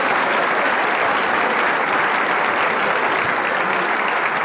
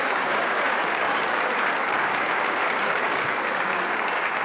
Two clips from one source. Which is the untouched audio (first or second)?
first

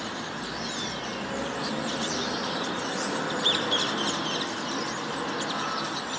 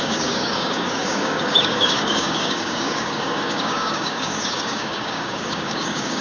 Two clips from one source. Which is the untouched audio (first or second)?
first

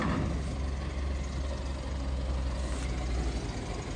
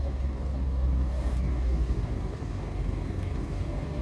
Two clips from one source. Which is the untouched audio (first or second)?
first